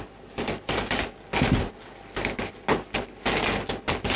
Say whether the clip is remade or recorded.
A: recorded